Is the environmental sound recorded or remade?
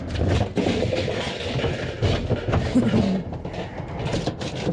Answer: recorded